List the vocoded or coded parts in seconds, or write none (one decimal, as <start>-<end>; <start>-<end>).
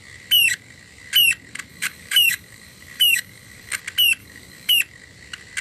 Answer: 1.7-3.8; 4.2-4.8